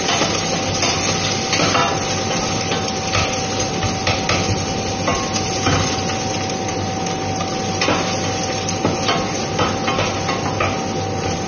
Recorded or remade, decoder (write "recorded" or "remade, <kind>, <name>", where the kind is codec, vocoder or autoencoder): recorded